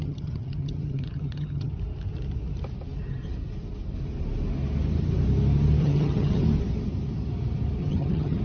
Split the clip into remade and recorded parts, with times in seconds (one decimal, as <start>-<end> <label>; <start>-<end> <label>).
0.0-1.7 remade; 1.7-5.8 recorded; 5.8-6.4 remade; 6.4-7.8 recorded; 7.8-8.4 remade